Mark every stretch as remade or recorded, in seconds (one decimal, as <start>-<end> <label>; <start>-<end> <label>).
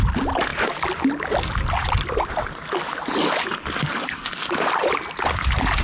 0.0-3.8 recorded; 3.8-4.5 remade; 4.5-5.8 recorded